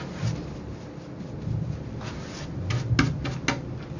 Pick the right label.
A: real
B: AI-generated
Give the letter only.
A